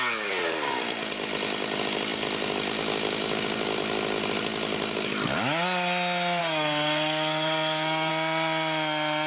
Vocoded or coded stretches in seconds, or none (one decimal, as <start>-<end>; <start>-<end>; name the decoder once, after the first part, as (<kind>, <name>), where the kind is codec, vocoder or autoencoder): 6.4-8.1 (codec, SNAC)